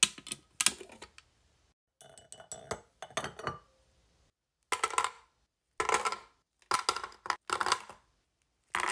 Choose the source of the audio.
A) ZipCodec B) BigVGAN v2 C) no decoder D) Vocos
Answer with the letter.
C